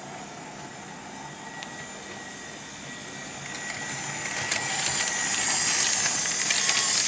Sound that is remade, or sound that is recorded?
recorded